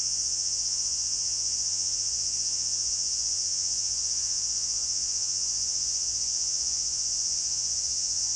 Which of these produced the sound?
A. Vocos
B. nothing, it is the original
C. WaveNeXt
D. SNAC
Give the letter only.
A